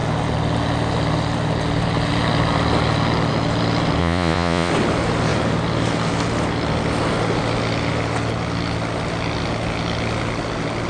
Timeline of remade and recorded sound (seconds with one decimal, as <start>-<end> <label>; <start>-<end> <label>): 0.0-4.0 recorded; 4.0-4.7 remade; 4.7-10.9 recorded

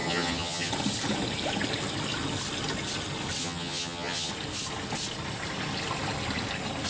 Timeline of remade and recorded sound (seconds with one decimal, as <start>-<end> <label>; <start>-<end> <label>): 0.0-0.7 remade; 0.7-3.4 recorded; 3.4-4.3 remade; 4.3-6.9 recorded